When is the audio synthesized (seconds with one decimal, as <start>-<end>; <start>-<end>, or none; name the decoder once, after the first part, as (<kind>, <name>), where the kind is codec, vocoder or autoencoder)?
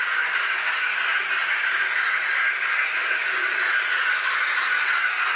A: none